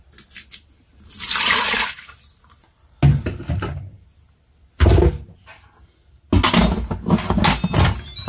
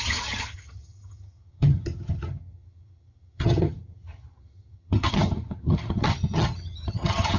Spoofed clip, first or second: second